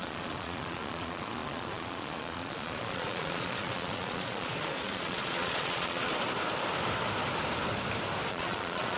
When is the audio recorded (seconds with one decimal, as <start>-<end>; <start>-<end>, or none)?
6.1-8.3

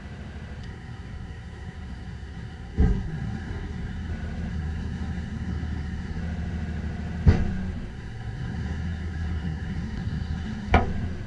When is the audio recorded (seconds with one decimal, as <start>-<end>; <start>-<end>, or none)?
0.0-0.6; 4.1-4.5; 6.2-7.9; 10.7-11.3

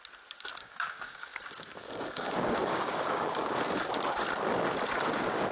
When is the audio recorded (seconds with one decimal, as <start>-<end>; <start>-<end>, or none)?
0.0-0.6; 3.9-5.5